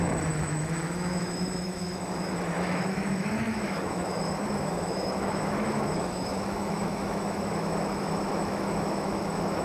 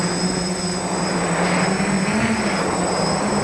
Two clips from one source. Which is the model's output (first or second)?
first